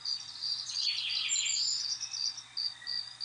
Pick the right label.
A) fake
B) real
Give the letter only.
B